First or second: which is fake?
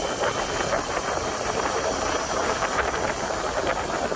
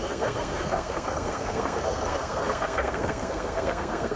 second